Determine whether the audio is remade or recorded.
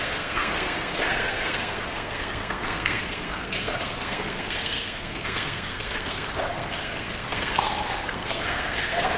remade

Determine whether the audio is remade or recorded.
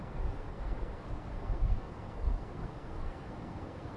remade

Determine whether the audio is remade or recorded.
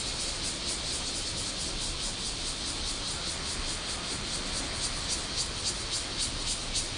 recorded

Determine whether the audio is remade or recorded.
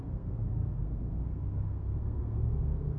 remade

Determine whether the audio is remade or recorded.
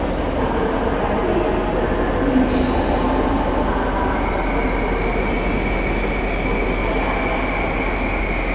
recorded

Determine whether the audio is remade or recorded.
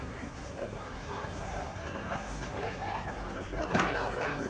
remade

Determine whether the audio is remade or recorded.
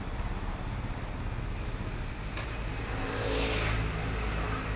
recorded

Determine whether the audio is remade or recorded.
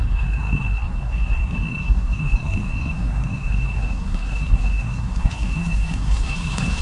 remade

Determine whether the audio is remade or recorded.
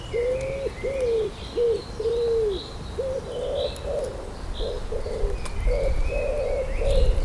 recorded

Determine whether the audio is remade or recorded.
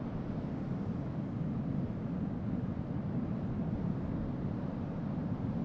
recorded